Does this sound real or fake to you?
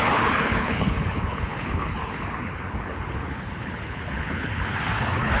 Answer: fake